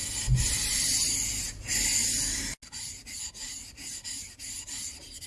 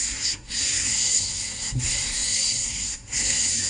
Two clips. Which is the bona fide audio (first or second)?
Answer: first